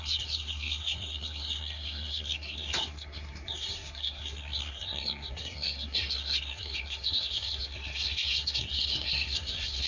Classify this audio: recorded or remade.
remade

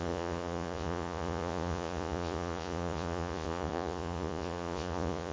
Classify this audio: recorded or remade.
remade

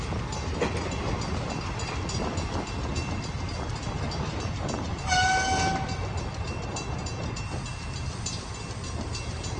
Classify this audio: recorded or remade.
recorded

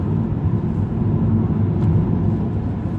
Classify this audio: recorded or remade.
recorded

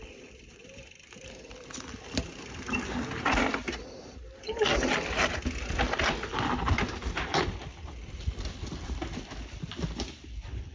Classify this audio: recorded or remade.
recorded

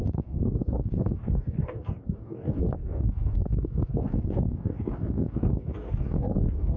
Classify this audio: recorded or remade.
remade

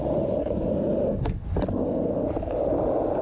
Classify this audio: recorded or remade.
recorded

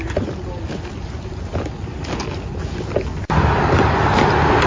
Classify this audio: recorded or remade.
recorded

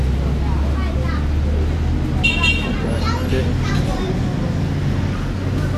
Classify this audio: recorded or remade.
recorded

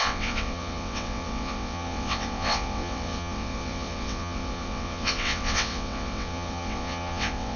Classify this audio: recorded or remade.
remade